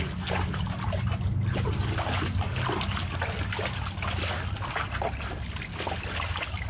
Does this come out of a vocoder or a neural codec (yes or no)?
no